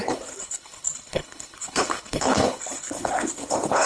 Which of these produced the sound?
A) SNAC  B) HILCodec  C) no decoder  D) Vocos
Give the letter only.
B